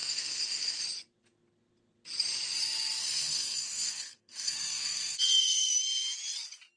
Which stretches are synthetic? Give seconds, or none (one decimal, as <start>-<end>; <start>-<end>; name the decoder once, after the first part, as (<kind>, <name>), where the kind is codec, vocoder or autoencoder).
0.0-0.8 (codec, SNAC); 3.0-5.7